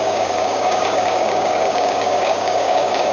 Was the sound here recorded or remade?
remade